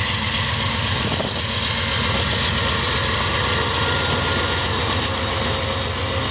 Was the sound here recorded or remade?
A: recorded